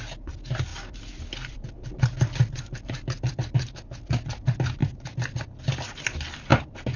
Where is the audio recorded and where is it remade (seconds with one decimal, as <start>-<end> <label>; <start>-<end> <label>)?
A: 0.0-0.7 recorded; 0.7-3.3 remade; 3.3-4.8 recorded; 4.8-5.7 remade; 5.7-6.5 recorded; 6.5-7.0 remade